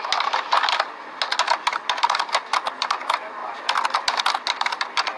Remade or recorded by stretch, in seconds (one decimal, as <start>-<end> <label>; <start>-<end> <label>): 0.0-5.2 recorded